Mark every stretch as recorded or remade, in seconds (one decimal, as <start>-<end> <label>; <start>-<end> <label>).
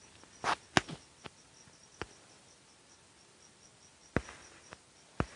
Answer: 0.0-5.4 recorded